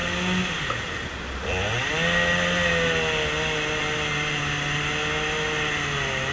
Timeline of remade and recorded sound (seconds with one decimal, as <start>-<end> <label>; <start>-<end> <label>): 0.0-6.3 recorded